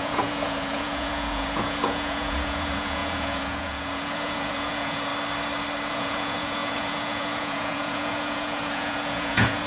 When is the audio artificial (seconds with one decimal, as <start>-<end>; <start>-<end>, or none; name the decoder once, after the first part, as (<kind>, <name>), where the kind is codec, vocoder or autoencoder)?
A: 0.0-5.1 (vocoder, Vocos); 5.9-9.7